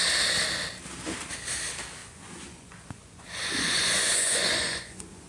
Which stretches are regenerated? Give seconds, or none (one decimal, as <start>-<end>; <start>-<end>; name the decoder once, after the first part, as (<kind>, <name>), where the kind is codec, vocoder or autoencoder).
2.0-5.3 (vocoder, Vocos)